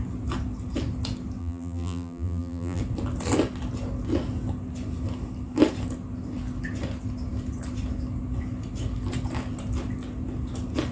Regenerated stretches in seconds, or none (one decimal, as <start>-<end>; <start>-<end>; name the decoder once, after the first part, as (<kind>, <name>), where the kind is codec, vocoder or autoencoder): 1.4-2.8 (vocoder, BigVGAN v2)